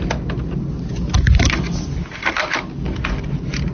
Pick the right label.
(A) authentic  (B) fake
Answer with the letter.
A